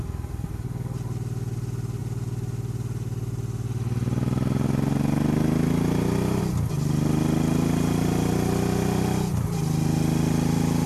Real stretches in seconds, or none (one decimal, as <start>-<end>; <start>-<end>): 0.0-10.9